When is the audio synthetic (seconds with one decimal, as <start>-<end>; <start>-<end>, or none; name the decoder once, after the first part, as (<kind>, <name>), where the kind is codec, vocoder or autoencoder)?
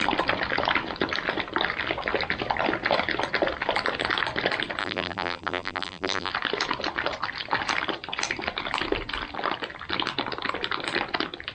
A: 4.8-6.3 (vocoder, BigVGAN v2)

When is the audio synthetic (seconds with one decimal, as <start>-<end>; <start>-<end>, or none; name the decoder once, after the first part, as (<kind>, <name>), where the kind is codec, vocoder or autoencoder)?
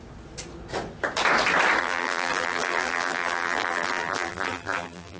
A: 1.8-5.2 (vocoder, BigVGAN v2)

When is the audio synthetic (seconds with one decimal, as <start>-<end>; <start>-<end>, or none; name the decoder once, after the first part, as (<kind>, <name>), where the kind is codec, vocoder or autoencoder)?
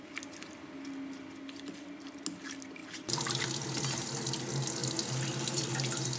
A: none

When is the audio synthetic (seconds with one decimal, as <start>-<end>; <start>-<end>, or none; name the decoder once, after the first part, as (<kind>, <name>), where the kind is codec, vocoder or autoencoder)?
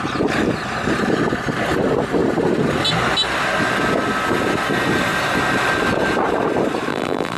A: 6.9-7.4 (vocoder, BigVGAN v2)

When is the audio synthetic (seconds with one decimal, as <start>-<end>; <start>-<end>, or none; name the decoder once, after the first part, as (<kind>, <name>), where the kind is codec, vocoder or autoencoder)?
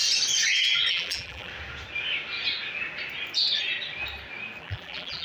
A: 0.9-1.5 (vocoder, BigVGAN v2); 4.6-5.2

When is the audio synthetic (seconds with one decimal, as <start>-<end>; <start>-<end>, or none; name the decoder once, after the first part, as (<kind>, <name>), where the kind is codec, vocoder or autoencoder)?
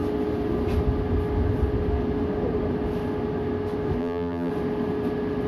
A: 4.0-4.5 (vocoder, BigVGAN v2)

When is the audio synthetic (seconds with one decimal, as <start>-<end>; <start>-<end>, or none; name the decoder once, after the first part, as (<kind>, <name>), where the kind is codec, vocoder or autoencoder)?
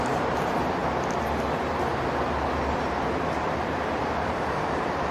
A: 0.0-0.8 (vocoder, BigVGAN v2); 3.9-5.1